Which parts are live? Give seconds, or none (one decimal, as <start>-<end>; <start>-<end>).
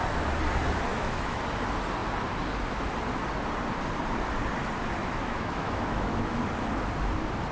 0.0-0.9; 1.4-5.0; 6.4-7.5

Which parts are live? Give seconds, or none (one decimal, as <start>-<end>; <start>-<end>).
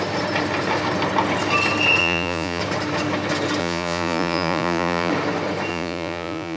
0.0-2.0; 2.6-3.6; 5.1-5.7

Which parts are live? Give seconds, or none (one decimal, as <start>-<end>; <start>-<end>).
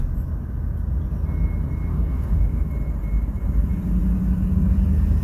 0.0-1.9; 2.7-5.2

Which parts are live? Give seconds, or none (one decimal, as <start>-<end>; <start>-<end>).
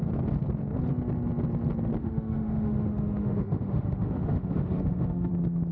0.0-2.0; 5.3-5.7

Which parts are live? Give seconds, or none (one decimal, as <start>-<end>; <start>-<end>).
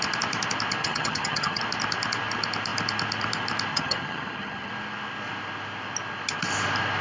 0.0-0.8; 1.6-3.7; 4.7-7.0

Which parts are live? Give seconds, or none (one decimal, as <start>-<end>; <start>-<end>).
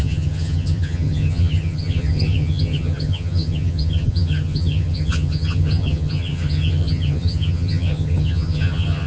none